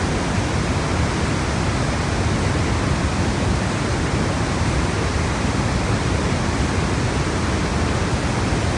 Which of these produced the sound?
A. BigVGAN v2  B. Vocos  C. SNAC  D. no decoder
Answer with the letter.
D